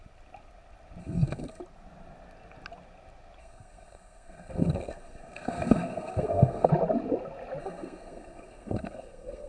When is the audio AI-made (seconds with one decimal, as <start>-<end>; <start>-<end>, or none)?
1.0-1.6; 3.4-6.7; 7.6-9.5